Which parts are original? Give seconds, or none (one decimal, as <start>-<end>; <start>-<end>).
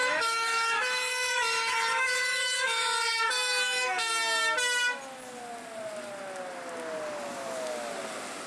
4.1-8.5